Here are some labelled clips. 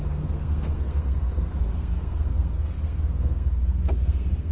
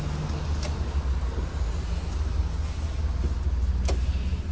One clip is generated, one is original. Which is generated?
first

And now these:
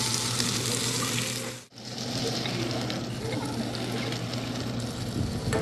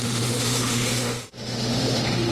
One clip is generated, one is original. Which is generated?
second